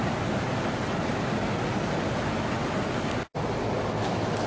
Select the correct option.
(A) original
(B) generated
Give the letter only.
A